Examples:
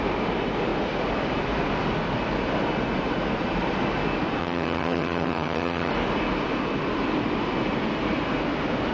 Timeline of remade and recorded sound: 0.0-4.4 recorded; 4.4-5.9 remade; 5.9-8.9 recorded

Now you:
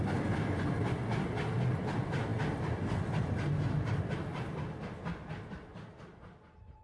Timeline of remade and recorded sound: 0.0-6.8 recorded

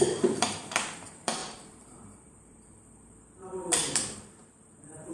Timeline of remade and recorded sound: 0.0-5.1 remade

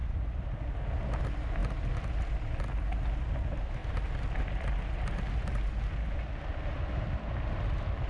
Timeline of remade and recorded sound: 0.0-8.1 recorded